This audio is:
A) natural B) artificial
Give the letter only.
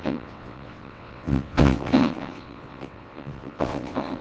B